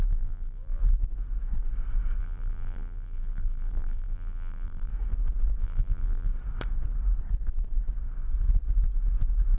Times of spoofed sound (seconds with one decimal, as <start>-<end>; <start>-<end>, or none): 0.0-0.8; 2.2-4.9; 5.6-6.3